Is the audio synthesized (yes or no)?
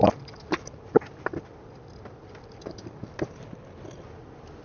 no